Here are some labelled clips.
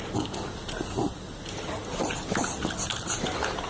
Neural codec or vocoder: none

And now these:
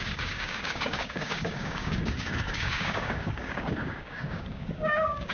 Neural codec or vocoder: codec, DAC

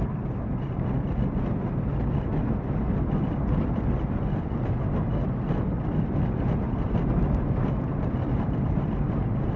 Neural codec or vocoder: none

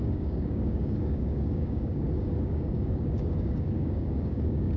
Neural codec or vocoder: codec, DAC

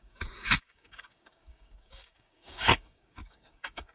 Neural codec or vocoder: codec, DAC